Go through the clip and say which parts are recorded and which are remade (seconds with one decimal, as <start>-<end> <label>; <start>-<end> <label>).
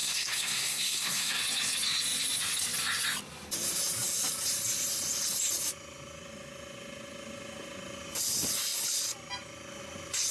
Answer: 0.0-1.4 remade; 1.4-10.3 recorded